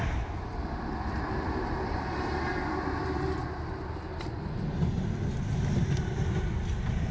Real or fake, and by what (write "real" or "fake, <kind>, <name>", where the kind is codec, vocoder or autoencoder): real